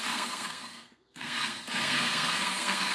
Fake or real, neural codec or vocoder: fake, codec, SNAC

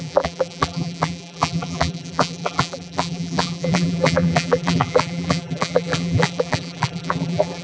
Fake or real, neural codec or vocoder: fake, vocoder, BigVGAN v2